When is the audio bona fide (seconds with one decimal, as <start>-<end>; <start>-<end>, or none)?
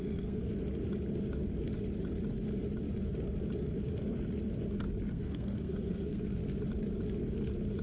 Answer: 0.4-5.1; 6.4-7.8